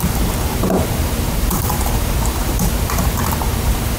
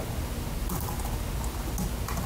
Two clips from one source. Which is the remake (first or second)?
first